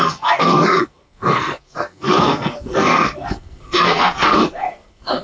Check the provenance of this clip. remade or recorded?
remade